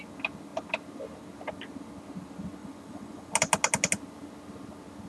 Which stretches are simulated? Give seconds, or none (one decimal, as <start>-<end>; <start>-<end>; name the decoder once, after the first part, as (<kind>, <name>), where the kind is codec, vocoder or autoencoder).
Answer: 2.6-3.3 (vocoder, Vocos)